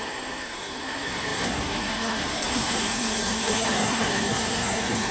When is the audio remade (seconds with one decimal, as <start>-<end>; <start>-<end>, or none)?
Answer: 0.0-5.1